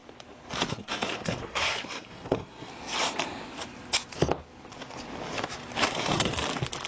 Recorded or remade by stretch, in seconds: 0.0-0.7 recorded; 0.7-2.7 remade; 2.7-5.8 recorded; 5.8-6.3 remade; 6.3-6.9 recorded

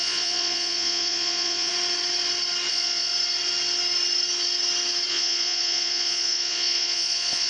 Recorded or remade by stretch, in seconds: 0.0-1.7 remade; 1.7-2.7 recorded; 2.7-3.1 remade; 3.1-5.1 recorded; 5.1-7.5 remade

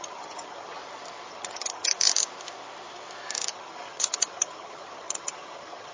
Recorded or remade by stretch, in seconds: 0.0-0.8 remade; 0.8-1.3 recorded; 1.3-1.9 remade; 1.9-3.5 recorded; 3.5-5.9 remade

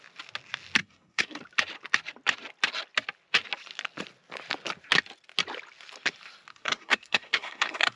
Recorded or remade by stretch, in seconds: 0.0-0.8 recorded; 0.8-1.4 remade; 1.4-6.5 recorded; 6.5-8.0 remade

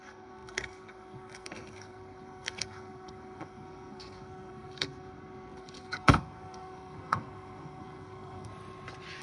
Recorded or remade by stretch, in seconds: 0.0-8.5 remade; 8.5-9.2 recorded

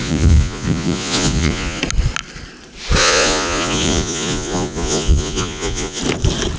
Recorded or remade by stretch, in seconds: 0.0-1.8 remade; 1.8-3.0 recorded; 3.0-6.0 remade; 6.0-6.6 recorded

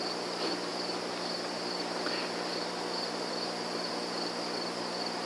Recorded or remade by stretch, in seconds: 0.0-5.3 recorded